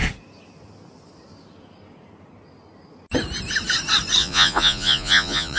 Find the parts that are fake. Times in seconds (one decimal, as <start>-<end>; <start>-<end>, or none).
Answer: 4.2-5.6